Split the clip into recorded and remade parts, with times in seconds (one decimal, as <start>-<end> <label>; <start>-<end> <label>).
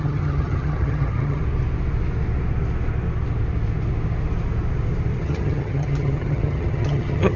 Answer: 0.0-1.4 remade; 1.4-5.2 recorded; 5.2-7.4 remade